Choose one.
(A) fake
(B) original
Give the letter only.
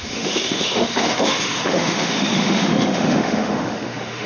A